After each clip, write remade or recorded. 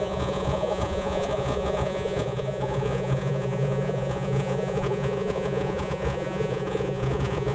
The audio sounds remade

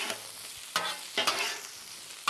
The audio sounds recorded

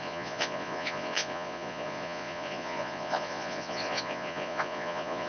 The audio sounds remade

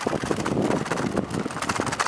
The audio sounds recorded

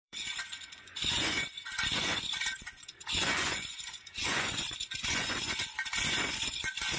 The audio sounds remade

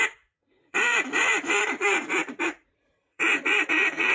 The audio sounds remade